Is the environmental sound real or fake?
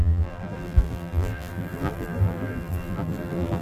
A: fake